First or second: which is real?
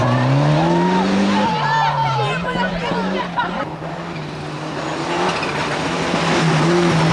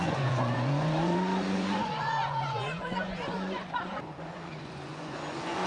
first